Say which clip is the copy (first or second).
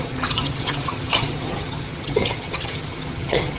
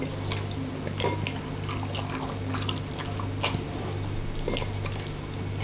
first